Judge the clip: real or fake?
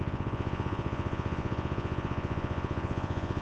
fake